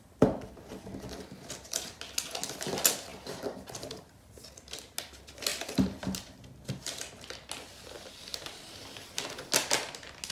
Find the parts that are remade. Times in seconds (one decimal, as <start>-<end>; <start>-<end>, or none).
none